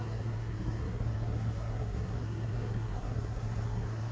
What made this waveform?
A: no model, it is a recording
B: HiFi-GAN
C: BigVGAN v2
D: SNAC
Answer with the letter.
D